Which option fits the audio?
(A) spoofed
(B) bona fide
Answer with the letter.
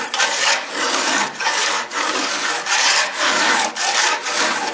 A